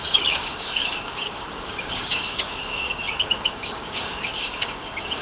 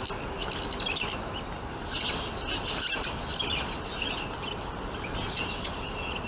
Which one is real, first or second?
second